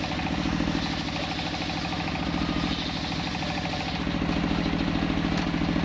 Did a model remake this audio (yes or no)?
no